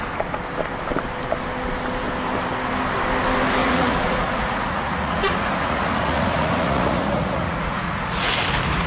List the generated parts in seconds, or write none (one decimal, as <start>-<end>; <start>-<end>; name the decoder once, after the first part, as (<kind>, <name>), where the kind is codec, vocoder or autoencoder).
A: 3.6-8.3 (vocoder, Vocos)